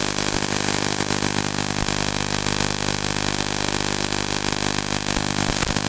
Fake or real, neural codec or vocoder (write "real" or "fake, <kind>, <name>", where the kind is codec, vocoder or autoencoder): fake, vocoder, BigVGAN v2